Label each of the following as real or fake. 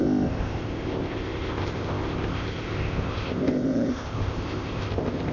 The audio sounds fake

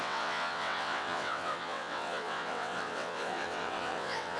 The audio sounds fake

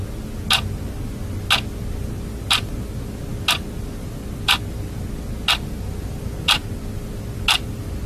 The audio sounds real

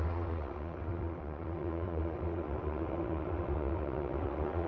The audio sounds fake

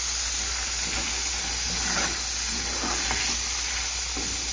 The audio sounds real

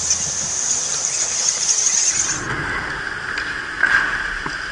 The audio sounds real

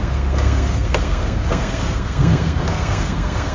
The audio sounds fake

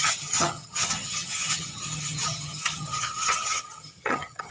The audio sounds fake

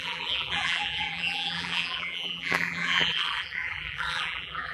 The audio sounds fake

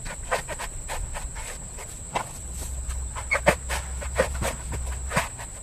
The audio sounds real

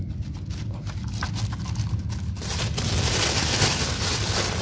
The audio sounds real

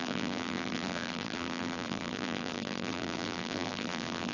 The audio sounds fake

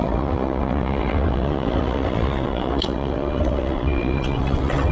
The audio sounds fake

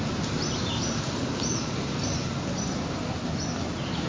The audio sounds real